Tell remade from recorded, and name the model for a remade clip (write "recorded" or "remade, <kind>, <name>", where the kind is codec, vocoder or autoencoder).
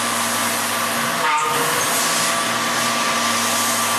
recorded